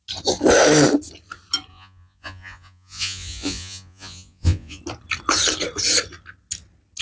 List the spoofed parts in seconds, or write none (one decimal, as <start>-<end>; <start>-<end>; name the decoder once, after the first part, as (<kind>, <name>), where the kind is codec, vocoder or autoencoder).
1.7-4.8 (vocoder, Vocos)

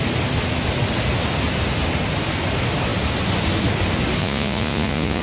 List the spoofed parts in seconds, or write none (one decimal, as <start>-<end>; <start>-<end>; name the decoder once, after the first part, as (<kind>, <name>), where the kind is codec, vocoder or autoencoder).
4.2-5.2 (vocoder, Vocos)